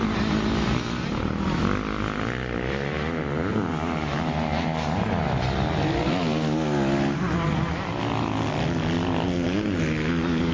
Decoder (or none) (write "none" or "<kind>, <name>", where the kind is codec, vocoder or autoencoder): none